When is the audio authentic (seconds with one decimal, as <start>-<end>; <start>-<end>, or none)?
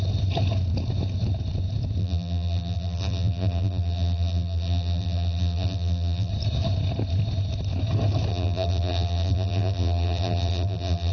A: 0.0-2.0; 6.3-8.3